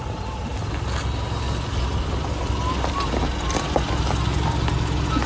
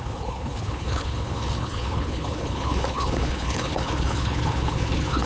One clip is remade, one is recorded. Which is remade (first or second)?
second